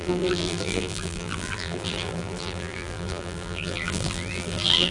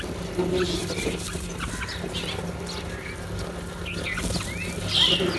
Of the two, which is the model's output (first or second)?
first